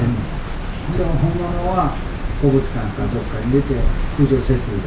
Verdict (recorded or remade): recorded